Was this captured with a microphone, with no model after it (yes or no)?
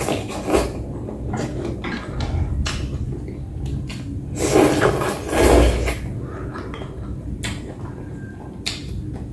yes